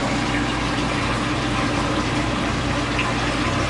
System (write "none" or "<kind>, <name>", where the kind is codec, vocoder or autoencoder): none